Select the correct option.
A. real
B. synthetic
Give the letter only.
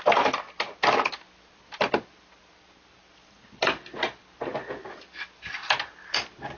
A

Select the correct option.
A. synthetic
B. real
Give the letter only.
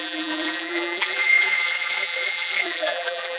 A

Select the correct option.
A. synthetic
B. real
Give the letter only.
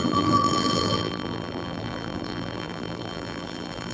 A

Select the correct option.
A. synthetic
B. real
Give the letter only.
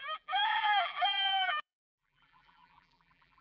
A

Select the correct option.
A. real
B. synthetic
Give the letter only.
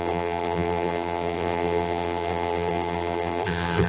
B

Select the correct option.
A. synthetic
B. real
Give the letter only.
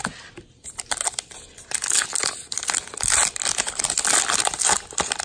B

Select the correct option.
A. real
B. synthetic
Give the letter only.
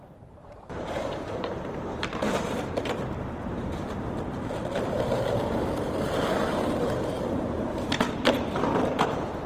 B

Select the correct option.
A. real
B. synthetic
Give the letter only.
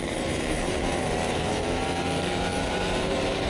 B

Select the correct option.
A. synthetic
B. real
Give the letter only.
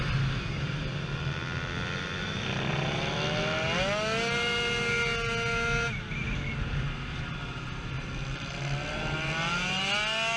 B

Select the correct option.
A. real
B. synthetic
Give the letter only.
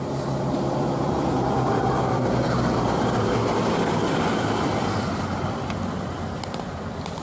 B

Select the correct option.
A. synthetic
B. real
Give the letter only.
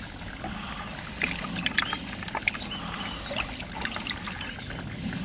B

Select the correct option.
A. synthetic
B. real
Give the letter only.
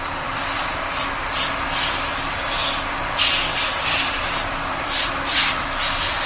A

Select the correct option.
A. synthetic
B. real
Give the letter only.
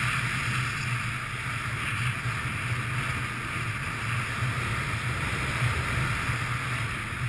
B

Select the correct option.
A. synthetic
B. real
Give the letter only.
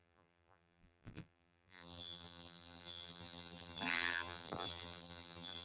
A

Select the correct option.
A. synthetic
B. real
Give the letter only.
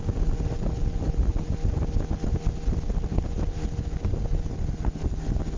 B